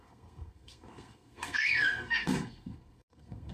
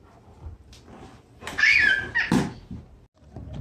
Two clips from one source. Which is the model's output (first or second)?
first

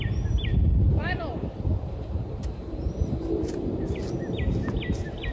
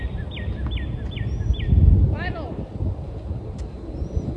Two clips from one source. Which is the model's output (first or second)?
first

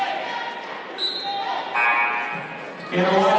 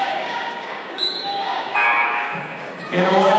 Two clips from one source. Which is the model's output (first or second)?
second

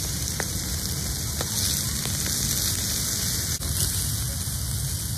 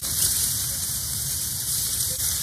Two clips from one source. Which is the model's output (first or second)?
second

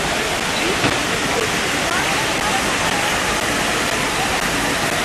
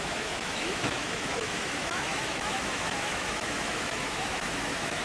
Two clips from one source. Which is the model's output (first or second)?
second